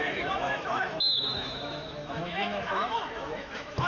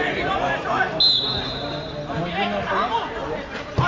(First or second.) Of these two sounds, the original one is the second